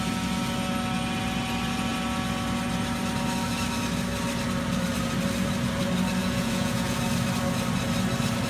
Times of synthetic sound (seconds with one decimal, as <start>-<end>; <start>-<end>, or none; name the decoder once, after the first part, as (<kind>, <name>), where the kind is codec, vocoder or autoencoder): 6.2-7.0 (vocoder, Vocos)